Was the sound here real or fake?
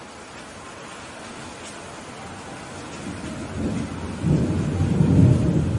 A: real